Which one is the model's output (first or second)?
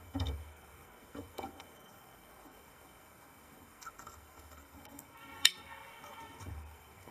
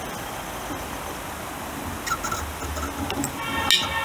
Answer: first